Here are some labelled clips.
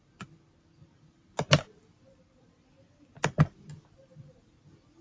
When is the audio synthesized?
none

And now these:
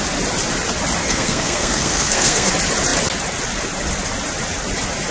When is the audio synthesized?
1.0-2.5 (codec, SNAC)